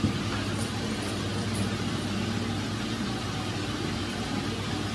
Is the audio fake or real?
real